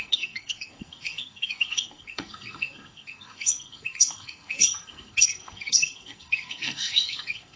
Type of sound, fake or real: fake